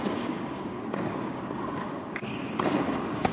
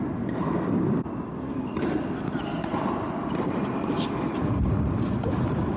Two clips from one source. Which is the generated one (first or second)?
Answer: first